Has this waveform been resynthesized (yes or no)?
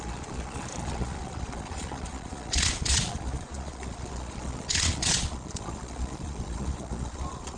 yes